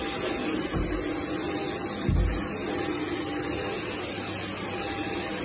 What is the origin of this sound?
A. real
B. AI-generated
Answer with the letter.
A